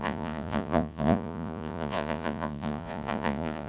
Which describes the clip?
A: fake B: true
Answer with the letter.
A